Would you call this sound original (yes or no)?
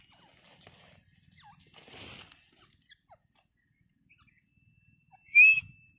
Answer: yes